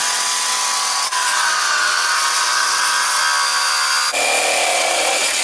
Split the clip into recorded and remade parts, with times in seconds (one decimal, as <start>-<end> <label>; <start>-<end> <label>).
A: 0.0-3.2 remade; 3.2-4.7 recorded; 4.7-5.4 remade

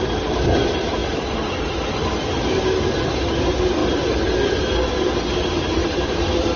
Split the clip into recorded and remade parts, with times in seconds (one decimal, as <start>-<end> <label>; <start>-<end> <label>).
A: 0.0-1.0 recorded; 1.0-2.7 remade; 2.7-5.8 recorded; 5.8-6.6 remade

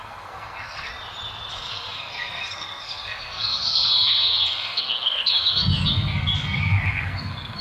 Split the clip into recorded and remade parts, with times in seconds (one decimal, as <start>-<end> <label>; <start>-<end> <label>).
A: 0.0-0.9 remade; 0.9-1.5 recorded; 1.5-7.6 remade